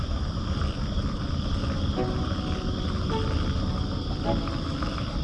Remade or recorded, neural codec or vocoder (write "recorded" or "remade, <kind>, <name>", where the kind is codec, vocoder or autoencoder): recorded